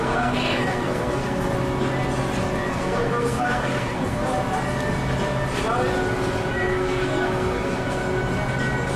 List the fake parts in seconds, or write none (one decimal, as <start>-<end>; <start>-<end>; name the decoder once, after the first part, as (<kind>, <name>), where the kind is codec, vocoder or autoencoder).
0.0-1.5 (codec, SNAC); 2.7-4.3; 6.5-8.0